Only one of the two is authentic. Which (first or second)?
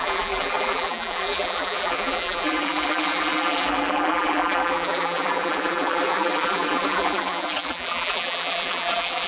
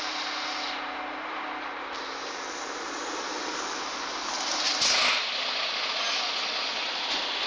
second